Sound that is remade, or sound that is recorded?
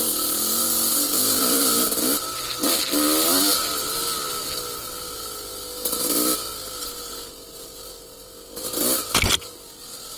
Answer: recorded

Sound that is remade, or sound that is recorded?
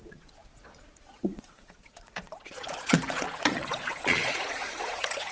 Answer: remade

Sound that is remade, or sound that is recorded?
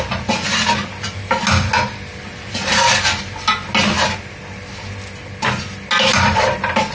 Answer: recorded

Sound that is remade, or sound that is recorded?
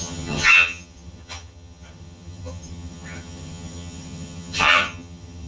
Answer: remade